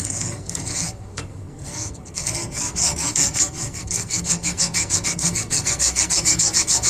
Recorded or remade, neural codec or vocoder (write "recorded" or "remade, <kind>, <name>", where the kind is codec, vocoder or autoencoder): remade, codec, SNAC